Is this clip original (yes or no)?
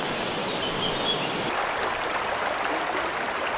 yes